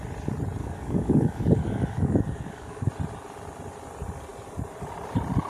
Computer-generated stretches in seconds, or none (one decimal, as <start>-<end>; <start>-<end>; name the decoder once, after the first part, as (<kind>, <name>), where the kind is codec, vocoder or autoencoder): 0.6-2.9 (codec, DAC)